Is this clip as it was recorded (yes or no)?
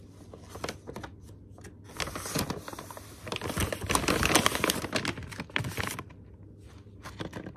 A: yes